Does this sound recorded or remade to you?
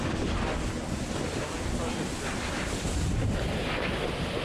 recorded